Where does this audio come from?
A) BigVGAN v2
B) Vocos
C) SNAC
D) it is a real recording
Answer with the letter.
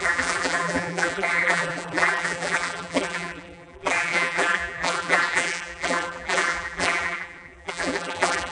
A